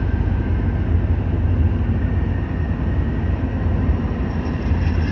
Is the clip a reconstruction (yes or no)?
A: no